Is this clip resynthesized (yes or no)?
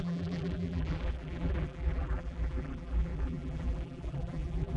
yes